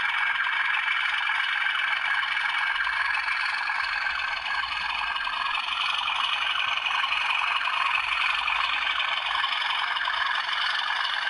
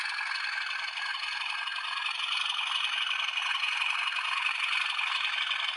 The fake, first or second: first